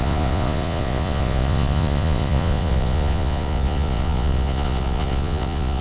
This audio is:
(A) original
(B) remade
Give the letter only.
B